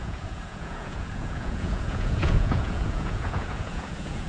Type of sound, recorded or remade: remade